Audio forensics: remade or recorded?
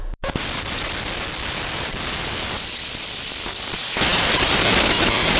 recorded